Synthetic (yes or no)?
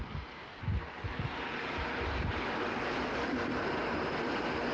no